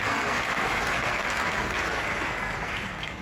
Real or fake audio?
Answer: fake